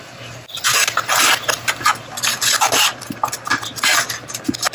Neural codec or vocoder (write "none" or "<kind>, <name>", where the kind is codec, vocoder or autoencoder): none